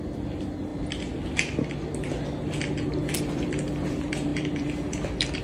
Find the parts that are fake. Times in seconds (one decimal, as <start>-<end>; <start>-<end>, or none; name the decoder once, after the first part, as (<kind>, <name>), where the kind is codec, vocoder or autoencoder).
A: 0.0-0.7 (vocoder, BigVGAN v2); 3.2-5.4